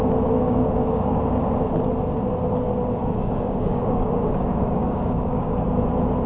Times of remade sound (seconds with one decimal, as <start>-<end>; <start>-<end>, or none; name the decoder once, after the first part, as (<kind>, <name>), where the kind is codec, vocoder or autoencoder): 0.4-1.2 (codec, DAC); 3.0-5.7